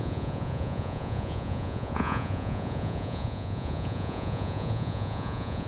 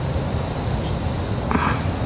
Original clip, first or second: second